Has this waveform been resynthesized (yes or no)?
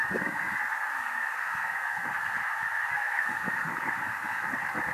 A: yes